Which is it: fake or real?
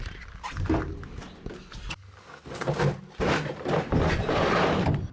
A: real